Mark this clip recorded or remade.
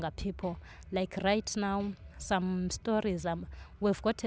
recorded